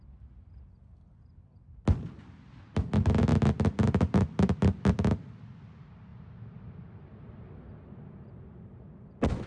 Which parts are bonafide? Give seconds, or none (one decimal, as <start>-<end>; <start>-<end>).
0.0-9.5